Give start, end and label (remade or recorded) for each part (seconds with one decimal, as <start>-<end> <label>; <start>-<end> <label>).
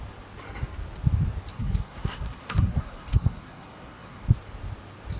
0.0-1.5 recorded; 1.5-4.2 remade; 4.2-5.2 recorded